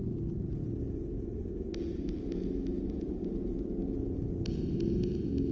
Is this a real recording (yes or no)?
yes